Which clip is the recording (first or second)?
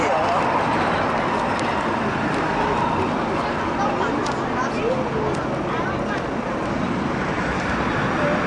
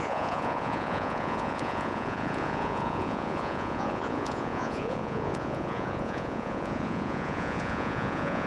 first